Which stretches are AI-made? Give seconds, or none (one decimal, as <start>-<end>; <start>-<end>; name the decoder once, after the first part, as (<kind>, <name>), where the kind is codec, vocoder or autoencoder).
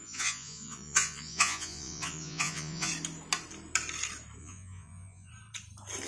0.0-2.9 (vocoder, Vocos); 4.4-5.3